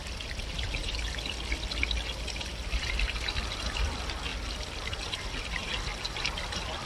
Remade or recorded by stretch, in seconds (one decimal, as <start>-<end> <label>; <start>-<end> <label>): 0.0-0.8 remade; 0.8-2.5 recorded; 2.5-4.3 remade; 4.3-6.1 recorded; 6.1-6.9 remade